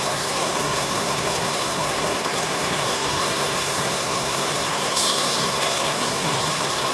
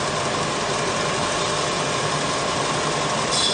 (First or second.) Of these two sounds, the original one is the second